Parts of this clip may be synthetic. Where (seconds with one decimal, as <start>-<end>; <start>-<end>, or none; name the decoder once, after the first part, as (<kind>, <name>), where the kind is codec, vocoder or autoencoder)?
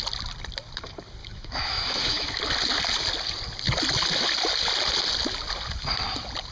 1.2-2.4 (autoencoder, DAC-VAE)